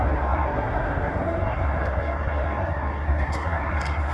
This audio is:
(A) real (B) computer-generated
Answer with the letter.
B